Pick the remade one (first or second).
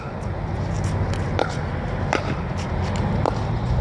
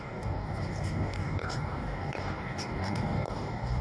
second